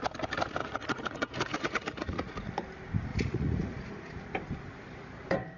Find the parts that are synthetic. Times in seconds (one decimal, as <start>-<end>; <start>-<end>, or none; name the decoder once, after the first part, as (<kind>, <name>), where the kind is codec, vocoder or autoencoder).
0.6-2.5 (vocoder, Vocos); 3.1-4.2